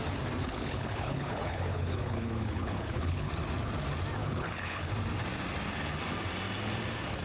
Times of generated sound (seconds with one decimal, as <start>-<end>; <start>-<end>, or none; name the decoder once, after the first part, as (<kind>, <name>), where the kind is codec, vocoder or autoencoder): 0.4-3.3 (codec, HILCodec); 4.2-4.9